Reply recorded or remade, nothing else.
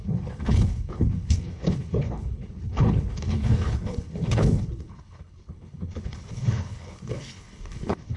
remade